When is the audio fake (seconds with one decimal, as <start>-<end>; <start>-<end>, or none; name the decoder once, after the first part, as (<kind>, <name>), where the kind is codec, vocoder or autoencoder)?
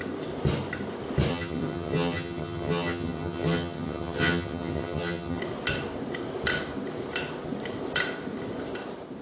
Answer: 1.3-5.4 (vocoder, HiFi-GAN)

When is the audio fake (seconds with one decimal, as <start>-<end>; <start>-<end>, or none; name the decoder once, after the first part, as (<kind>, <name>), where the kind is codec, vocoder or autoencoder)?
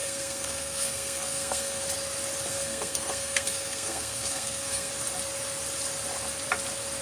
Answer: 0.0-1.8 (codec, SNAC); 2.5-4.9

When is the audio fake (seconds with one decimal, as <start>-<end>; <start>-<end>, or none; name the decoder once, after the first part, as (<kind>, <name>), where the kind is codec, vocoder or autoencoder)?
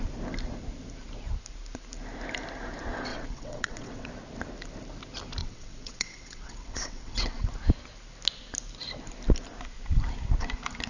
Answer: 3.1-4.1 (vocoder, WaveNeXt); 5.4-7.5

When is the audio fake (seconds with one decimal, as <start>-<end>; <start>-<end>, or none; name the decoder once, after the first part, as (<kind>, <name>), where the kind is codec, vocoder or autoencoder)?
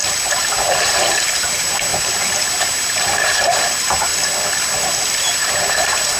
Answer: 1.2-1.9 (vocoder, BigVGAN v2); 3.0-4.1; 5.2-6.2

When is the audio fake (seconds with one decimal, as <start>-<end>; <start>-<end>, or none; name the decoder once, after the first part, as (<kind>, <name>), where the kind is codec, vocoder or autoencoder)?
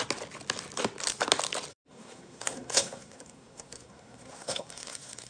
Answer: 1.7-5.3 (codec, SNAC)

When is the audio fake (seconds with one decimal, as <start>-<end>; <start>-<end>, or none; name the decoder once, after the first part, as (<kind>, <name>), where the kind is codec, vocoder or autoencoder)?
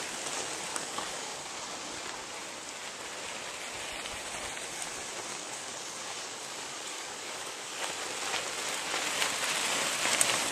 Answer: 0.7-1.5 (codec, DAC); 5.3-7.9